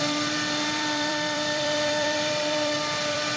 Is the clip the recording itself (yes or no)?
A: no